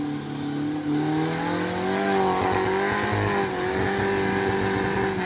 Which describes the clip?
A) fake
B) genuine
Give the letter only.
B